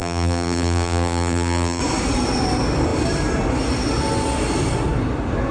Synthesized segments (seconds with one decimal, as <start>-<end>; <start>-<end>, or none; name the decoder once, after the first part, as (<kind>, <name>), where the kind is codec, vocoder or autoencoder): 0.0-1.8 (vocoder, BigVGAN v2)